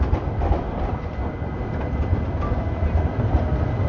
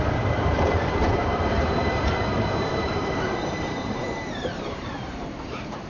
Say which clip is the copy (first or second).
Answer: second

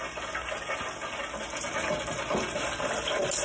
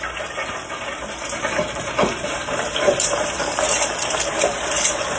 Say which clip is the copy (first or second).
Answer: second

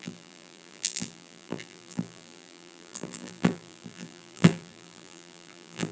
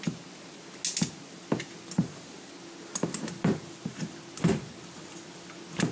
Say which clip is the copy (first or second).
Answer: first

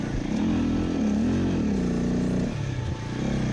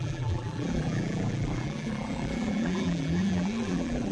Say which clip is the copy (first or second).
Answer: second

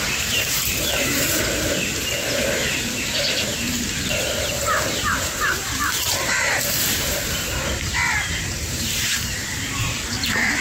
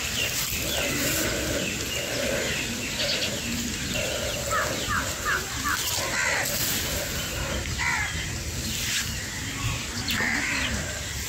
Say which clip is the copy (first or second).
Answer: first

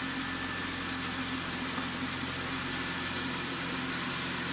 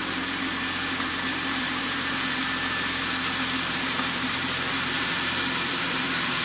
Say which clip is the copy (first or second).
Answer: second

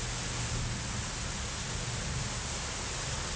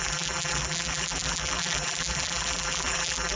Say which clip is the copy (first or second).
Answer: second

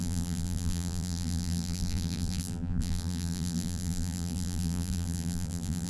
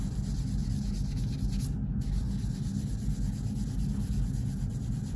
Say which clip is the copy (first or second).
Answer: first